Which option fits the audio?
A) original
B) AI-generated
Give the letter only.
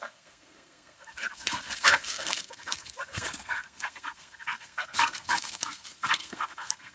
B